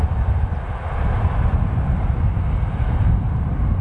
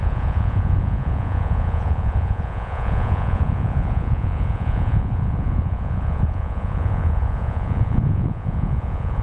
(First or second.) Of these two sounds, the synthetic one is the second